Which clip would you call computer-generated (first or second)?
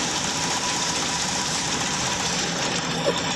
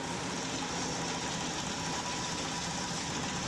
first